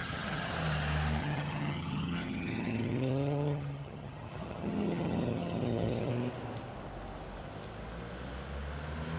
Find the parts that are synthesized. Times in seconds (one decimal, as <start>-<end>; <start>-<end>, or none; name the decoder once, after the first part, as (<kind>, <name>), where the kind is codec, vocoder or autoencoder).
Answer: 0.0-0.5 (vocoder, HiFi-GAN); 1.2-6.1